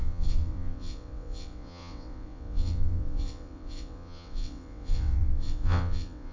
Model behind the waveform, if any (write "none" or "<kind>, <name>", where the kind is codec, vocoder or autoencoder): vocoder, WaveNeXt